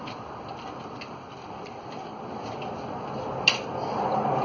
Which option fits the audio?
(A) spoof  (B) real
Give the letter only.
B